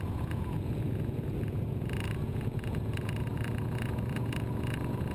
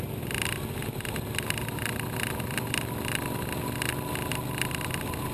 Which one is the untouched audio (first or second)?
second